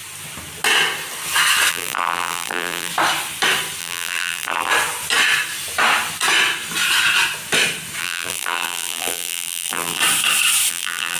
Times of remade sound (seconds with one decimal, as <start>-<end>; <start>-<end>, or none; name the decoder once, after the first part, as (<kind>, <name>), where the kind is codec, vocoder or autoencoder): 1.7-2.9 (vocoder, BigVGAN v2); 3.8-4.7; 8.0-10.0; 10.7-11.2